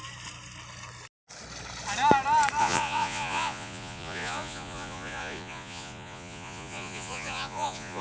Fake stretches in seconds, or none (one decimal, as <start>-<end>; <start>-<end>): 2.6-8.0